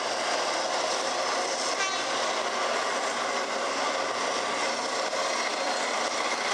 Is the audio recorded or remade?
recorded